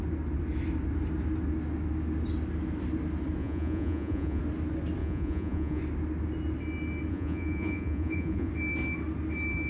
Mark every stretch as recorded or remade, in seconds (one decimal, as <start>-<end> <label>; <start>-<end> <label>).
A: 0.0-3.4 recorded; 3.4-4.4 remade; 4.4-5.0 recorded; 5.0-5.8 remade; 5.8-7.1 recorded; 7.1-8.5 remade; 8.5-9.7 recorded